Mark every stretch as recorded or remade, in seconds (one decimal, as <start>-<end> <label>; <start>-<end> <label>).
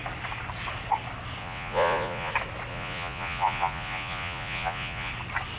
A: 0.0-1.4 recorded; 1.4-2.3 remade; 2.3-2.7 recorded; 2.7-5.1 remade; 5.1-5.6 recorded